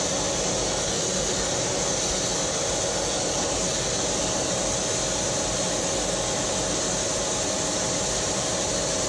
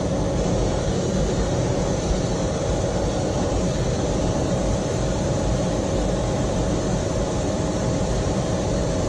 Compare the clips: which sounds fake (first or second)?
second